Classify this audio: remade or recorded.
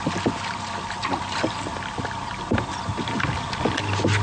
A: recorded